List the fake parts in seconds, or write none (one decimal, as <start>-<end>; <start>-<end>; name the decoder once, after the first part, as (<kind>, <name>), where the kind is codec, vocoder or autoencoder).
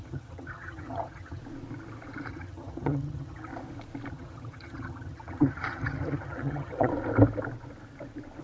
0.0-1.4 (vocoder, HiFi-GAN); 2.3-3.5; 4.1-6.9